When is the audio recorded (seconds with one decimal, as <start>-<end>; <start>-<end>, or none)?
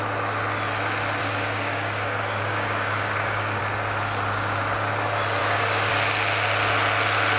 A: 0.0-1.2; 3.6-5.4; 5.9-7.4